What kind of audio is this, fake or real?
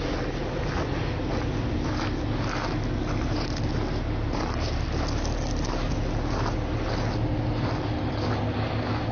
real